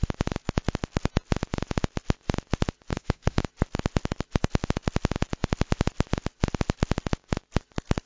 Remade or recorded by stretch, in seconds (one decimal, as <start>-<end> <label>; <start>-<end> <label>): 0.0-2.9 recorded; 2.9-3.4 remade; 3.4-8.1 recorded